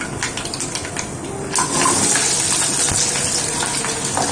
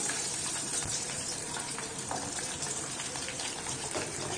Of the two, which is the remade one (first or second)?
second